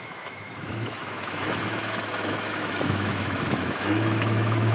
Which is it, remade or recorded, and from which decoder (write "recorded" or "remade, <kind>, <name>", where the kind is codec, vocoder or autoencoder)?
remade, autoencoder, DAC-VAE